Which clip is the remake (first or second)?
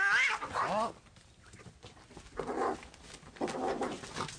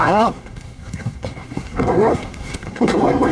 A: second